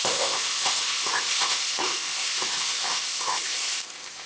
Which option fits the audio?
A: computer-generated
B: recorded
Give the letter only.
A